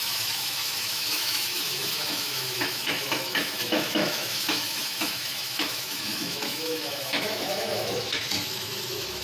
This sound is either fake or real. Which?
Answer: fake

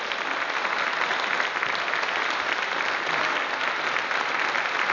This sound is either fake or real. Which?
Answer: real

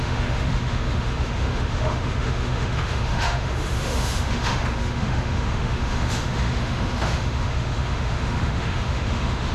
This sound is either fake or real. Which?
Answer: fake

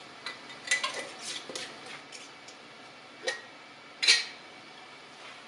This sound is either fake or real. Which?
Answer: real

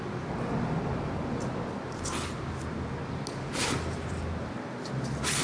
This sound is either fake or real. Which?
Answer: real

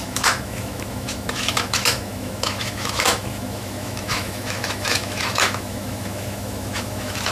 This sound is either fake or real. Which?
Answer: fake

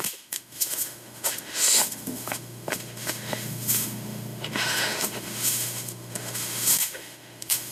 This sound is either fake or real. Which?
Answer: fake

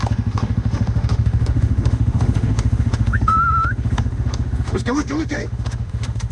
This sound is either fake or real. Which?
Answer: fake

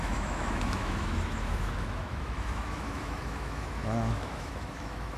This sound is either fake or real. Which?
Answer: fake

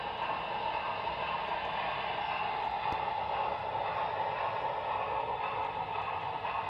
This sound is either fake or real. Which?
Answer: real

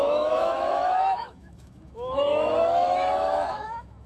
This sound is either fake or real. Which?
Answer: fake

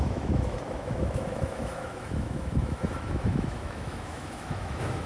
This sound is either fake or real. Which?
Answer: fake